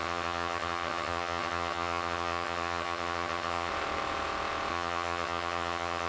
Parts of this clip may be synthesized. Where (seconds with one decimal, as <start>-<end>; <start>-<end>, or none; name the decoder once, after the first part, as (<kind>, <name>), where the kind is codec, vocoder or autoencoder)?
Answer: 0.0-3.7 (vocoder, HiFi-GAN); 4.7-6.1